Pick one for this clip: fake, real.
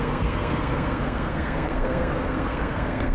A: fake